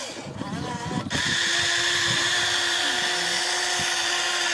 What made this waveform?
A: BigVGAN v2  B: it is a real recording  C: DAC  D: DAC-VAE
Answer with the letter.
B